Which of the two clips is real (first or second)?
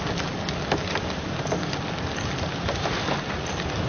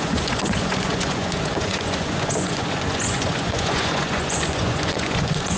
first